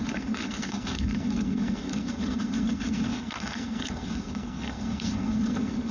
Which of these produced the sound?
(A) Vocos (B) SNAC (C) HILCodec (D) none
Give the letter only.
B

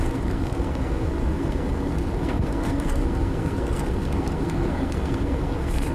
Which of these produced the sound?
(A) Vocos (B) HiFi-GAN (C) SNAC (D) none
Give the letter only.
C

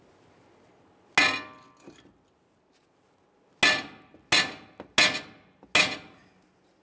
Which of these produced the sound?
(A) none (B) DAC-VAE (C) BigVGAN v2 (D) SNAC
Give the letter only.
A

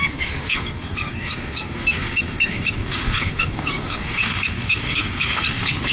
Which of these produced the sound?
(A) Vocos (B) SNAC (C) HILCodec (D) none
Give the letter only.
B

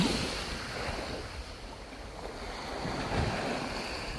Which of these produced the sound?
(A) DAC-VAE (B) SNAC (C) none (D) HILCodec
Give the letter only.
C